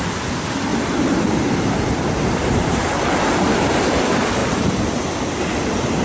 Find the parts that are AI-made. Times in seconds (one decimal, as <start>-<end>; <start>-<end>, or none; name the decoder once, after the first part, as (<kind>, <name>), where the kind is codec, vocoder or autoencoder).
0.7-3.8 (vocoder, BigVGAN v2)